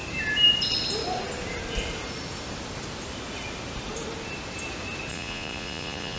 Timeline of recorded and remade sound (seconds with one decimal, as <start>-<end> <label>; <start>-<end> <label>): 0.0-5.1 recorded; 5.1-6.2 remade